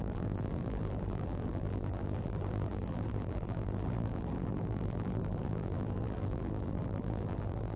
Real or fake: fake